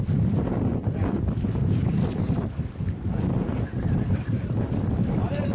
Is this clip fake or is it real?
fake